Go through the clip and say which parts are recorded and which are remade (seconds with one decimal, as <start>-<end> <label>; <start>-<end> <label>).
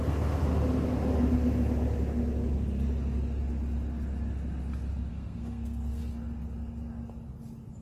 0.0-0.4 remade; 0.4-5.1 recorded; 5.1-6.0 remade; 6.0-7.8 recorded